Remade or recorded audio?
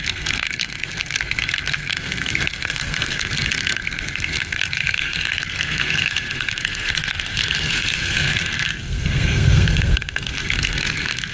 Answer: remade